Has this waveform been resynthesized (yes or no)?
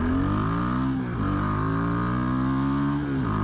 no